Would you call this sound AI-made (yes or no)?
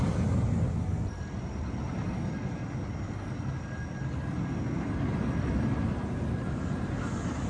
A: no